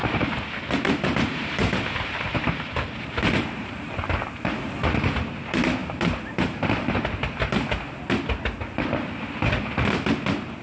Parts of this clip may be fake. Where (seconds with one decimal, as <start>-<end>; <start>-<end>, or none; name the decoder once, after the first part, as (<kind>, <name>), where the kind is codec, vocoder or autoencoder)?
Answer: 0.0-4.2 (vocoder, BigVGAN v2); 5.8-7.0